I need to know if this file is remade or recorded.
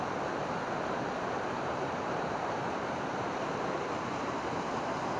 remade